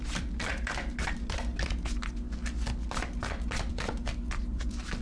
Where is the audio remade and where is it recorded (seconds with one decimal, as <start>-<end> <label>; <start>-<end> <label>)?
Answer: 0.0-0.5 remade; 0.5-1.1 recorded; 1.1-1.5 remade; 1.5-3.7 recorded; 3.7-5.0 remade